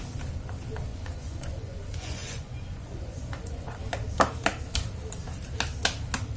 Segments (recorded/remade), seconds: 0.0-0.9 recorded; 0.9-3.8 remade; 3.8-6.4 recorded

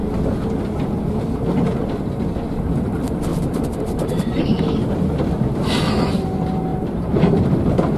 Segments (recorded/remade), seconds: 0.0-3.3 recorded; 3.3-4.4 remade; 4.4-6.7 recorded; 6.7-8.0 remade

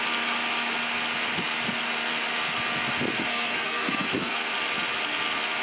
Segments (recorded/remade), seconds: 0.0-3.3 recorded; 3.3-4.5 remade; 4.5-5.6 recorded

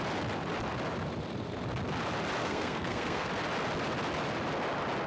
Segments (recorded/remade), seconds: 0.0-2.4 recorded; 2.4-3.3 remade; 3.3-5.1 recorded

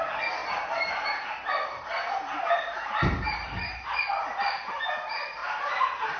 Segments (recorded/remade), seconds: 0.0-0.4 recorded; 0.4-4.0 remade; 4.0-5.4 recorded; 5.4-6.2 remade

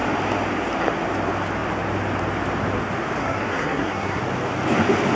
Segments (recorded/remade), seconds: 0.0-3.2 recorded; 3.2-4.2 remade; 4.2-5.2 recorded

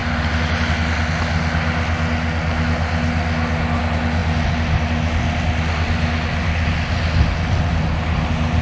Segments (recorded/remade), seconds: 0.0-8.6 recorded

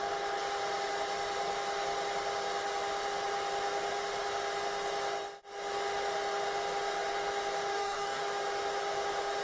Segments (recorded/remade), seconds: 0.0-7.7 recorded; 7.7-8.2 remade; 8.2-9.4 recorded